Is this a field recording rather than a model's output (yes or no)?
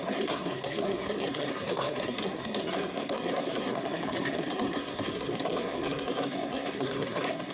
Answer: no